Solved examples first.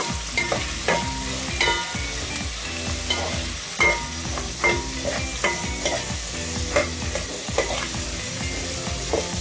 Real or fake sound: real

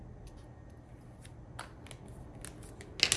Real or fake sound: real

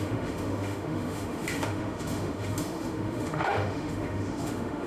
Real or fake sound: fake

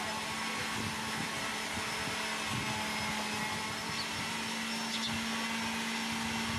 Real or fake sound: real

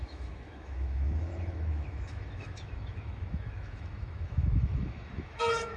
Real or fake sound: fake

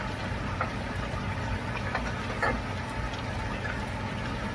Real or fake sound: real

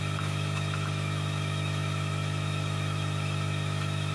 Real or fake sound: fake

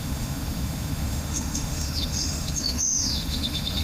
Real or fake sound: fake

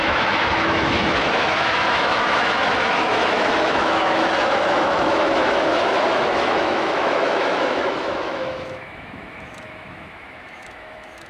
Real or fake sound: fake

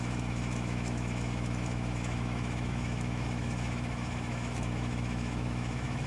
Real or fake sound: fake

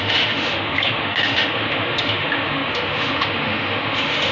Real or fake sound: fake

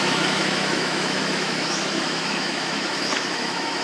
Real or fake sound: fake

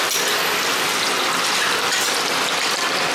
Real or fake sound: real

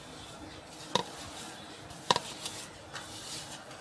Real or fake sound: real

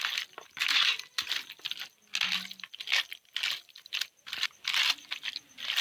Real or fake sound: real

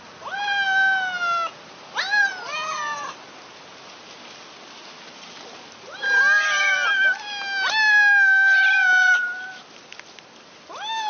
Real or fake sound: real